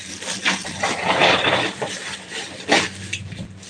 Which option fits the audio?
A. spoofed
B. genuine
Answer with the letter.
A